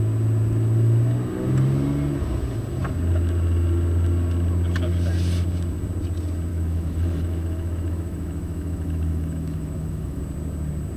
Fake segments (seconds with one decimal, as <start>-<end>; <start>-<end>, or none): 6.5-10.2